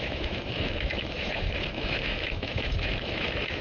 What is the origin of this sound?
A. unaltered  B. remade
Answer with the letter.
B